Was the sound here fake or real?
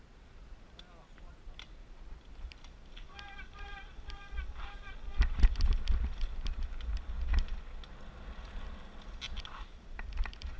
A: real